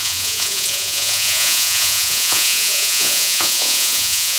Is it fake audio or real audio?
fake